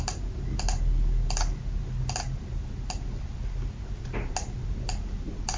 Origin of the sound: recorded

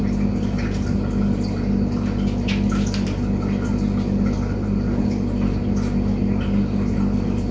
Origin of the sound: recorded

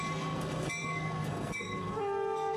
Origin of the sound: remade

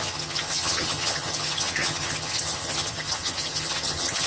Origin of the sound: remade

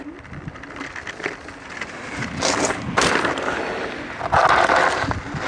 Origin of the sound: recorded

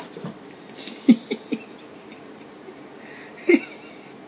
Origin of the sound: recorded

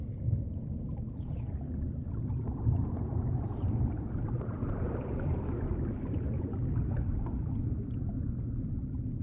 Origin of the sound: recorded